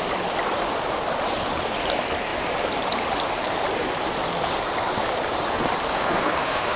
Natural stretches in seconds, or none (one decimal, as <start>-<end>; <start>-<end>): 0.0-5.9